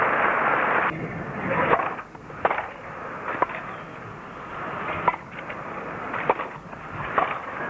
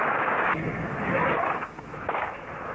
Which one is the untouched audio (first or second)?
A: first